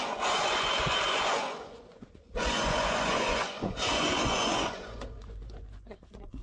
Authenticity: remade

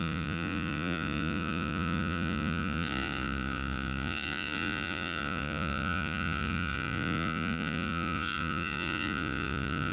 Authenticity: remade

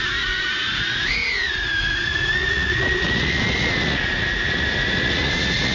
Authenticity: remade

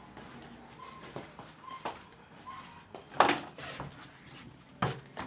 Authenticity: recorded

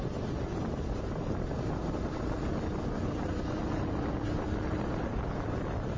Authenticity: recorded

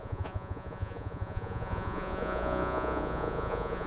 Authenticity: remade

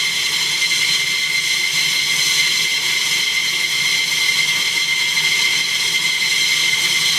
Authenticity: recorded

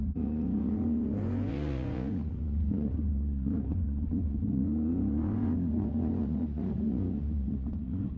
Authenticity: remade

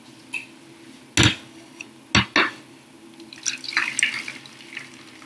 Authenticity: recorded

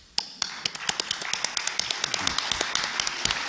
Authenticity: recorded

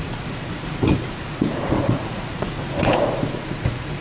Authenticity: remade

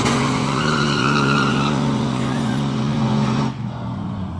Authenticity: remade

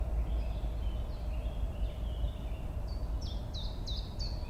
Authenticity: recorded